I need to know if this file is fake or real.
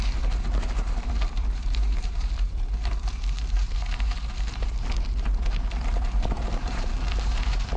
fake